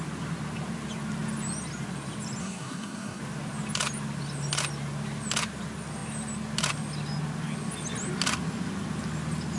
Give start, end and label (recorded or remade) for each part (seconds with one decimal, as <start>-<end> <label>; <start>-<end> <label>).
0.0-2.4 recorded; 2.4-3.2 remade; 3.2-9.6 recorded